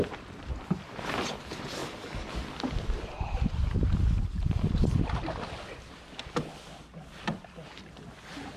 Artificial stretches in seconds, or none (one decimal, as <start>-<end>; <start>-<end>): none